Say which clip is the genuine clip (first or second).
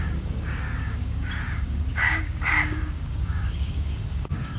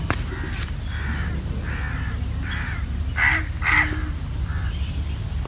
second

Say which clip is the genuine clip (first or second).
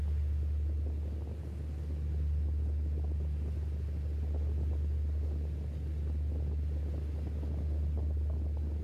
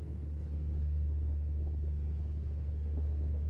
first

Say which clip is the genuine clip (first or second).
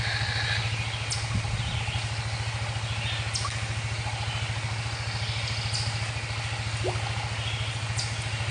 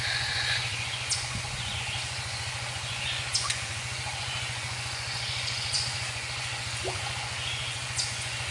first